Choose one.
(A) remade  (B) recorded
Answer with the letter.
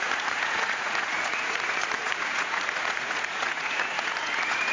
A